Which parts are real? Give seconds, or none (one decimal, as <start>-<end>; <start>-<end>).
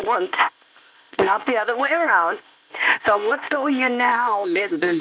none